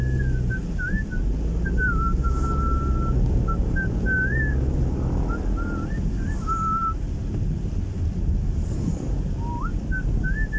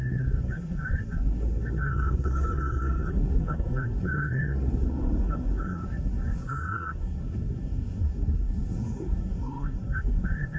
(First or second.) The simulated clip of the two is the second